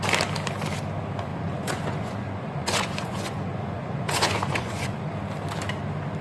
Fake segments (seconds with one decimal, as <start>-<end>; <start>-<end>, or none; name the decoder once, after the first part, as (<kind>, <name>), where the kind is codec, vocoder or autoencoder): 1.3-5.0 (vocoder, Vocos)